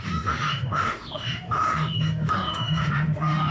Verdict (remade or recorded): remade